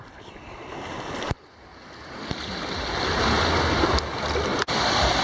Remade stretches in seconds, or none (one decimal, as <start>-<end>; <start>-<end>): 1.7-3.8; 4.5-5.2